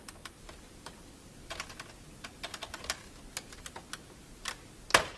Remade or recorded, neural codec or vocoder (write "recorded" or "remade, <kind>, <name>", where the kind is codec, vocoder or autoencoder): recorded